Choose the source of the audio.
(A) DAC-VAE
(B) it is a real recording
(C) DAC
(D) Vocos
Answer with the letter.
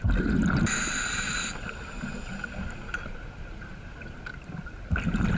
B